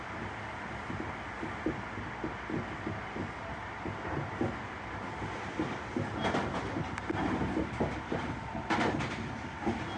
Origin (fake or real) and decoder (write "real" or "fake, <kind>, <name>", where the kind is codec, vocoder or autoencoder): real